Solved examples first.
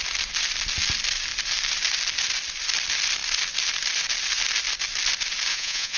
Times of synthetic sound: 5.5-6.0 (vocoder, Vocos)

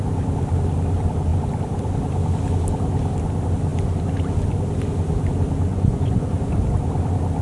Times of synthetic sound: 5.7-6.3 (vocoder, Vocos)